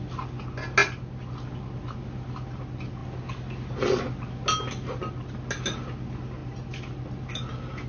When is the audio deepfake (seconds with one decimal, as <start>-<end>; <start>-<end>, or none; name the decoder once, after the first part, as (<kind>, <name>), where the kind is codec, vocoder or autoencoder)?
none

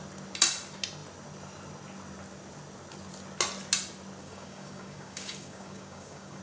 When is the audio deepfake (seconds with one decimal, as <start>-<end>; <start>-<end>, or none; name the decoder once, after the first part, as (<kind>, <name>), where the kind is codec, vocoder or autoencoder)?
4.2-6.4 (codec, DAC)

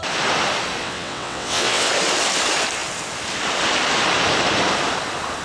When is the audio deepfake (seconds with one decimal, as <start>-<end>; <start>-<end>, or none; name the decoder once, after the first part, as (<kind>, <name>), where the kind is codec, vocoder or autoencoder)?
0.8-1.9 (vocoder, WaveNeXt)

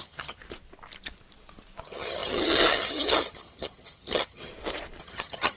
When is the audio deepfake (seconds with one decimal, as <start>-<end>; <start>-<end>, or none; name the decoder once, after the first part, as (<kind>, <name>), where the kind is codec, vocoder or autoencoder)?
0.0-0.4 (vocoder, HiFi-GAN); 1.8-4.5; 5.0-5.6

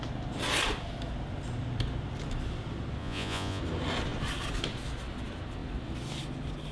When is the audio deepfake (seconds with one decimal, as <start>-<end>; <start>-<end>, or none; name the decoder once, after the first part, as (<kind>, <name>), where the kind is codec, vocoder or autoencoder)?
3.0-3.6 (vocoder, Vocos)

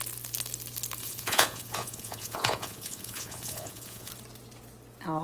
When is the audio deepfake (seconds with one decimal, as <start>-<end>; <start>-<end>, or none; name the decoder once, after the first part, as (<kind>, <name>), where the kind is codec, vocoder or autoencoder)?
1.0-4.1 (vocoder, Vocos)